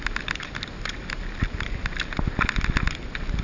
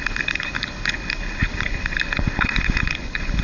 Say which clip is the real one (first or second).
first